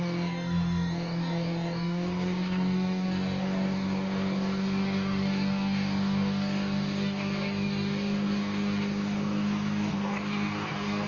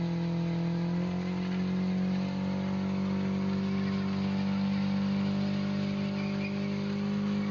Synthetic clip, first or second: first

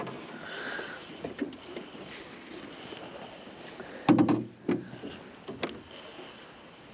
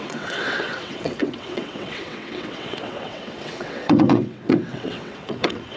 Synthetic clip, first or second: second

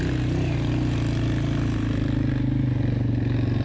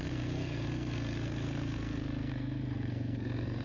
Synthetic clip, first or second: second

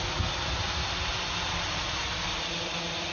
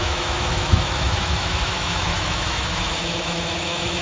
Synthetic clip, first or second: second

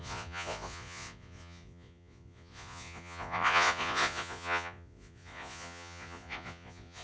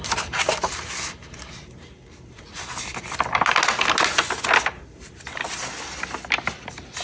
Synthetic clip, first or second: first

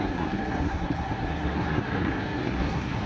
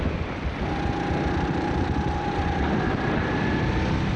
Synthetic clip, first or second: first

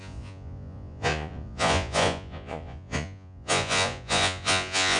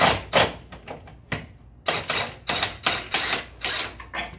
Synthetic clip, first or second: first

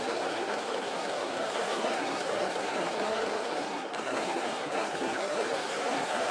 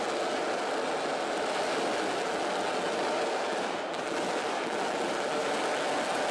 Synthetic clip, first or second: first